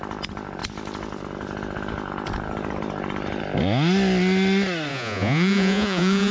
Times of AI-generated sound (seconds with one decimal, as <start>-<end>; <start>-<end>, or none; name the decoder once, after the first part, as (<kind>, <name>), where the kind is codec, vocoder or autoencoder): 4.9-6.3 (vocoder, Vocos)